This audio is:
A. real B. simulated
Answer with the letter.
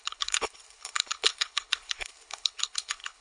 B